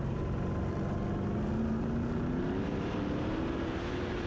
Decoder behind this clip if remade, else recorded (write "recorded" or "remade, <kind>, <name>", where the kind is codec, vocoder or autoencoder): recorded